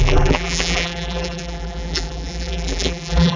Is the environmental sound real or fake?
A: fake